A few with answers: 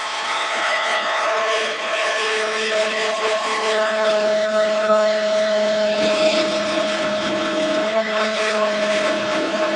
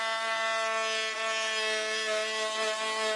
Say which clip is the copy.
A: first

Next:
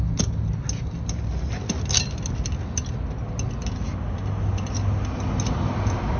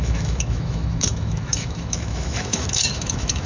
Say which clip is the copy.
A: second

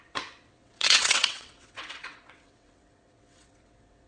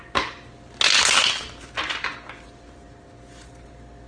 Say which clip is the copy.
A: first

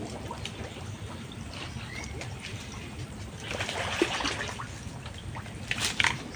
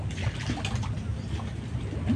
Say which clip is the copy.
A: first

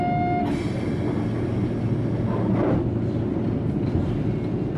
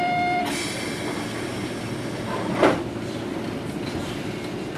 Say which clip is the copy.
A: second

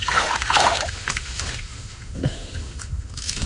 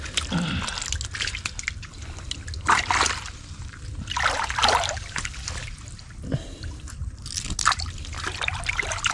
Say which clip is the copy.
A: first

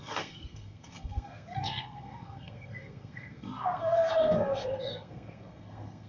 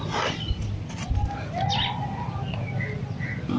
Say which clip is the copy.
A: first